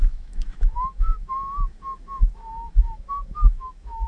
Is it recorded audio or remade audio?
remade